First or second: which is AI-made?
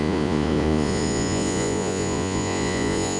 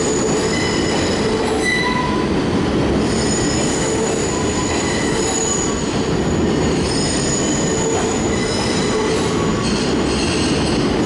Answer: first